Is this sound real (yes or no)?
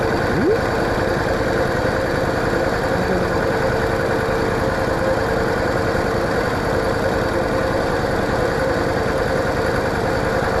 yes